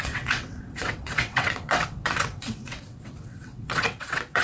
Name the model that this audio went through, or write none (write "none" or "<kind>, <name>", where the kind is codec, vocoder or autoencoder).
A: vocoder, WaveNeXt